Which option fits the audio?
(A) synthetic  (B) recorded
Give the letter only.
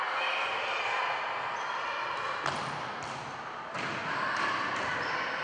B